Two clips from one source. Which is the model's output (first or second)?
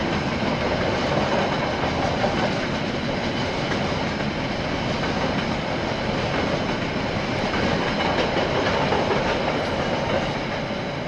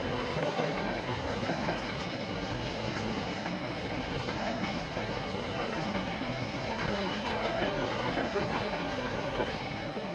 second